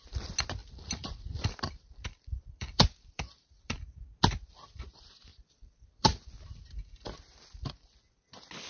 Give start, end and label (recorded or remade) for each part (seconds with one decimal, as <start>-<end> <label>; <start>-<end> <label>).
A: 0.0-0.6 recorded; 0.6-3.8 remade; 3.8-5.3 recorded; 5.3-6.3 remade; 6.3-8.7 recorded

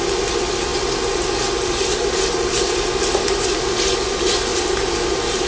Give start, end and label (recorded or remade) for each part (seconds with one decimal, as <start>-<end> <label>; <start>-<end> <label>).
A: 0.0-0.7 recorded; 0.7-3.1 remade; 3.1-4.5 recorded; 4.5-5.1 remade; 5.1-5.5 recorded

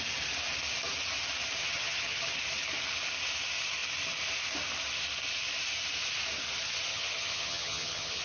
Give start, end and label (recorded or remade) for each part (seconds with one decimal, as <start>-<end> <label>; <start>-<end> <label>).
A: 0.0-1.6 recorded; 1.6-2.3 remade; 2.3-6.9 recorded; 6.9-8.2 remade

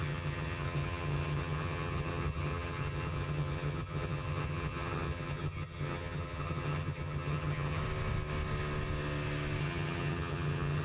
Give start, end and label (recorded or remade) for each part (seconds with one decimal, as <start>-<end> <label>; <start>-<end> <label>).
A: 0.0-7.8 remade; 7.8-9.6 recorded; 9.6-10.8 remade

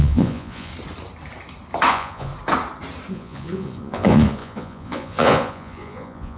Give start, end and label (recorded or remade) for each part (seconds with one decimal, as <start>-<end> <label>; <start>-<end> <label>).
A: 0.0-0.7 remade; 0.7-1.9 recorded; 1.9-2.3 remade; 2.3-3.1 recorded; 3.1-6.4 remade